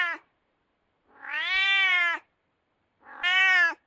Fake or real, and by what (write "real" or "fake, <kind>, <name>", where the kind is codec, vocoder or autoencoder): fake, vocoder, BigVGAN v2